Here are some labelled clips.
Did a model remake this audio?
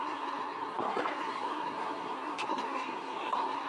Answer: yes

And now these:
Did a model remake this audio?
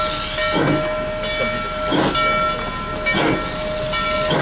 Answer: no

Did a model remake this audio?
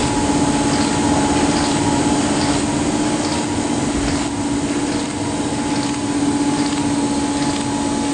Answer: no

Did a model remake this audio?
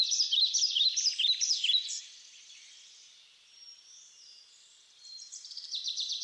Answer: yes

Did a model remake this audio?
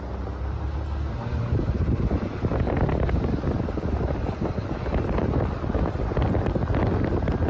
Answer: no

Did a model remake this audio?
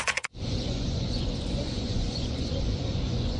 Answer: yes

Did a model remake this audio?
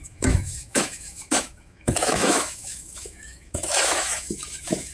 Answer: yes